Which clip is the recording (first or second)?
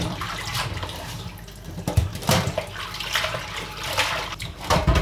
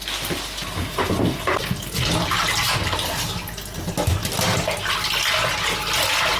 second